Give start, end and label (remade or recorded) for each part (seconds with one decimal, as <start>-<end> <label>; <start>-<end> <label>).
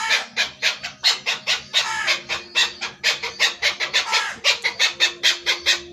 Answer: 0.0-2.6 recorded; 2.6-3.8 remade; 3.8-5.9 recorded